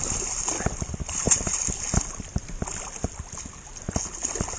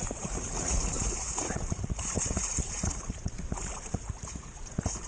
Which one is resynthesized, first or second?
second